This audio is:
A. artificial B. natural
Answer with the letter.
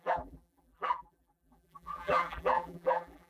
A